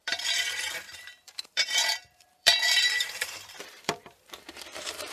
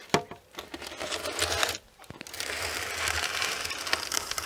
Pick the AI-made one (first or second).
first